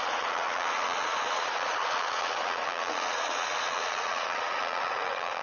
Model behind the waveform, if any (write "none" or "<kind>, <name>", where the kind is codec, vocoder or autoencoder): vocoder, Vocos